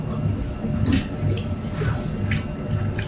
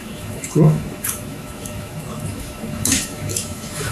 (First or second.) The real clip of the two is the first